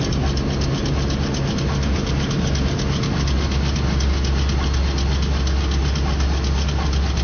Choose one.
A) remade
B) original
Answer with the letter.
B